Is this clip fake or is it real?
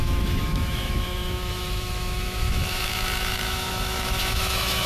fake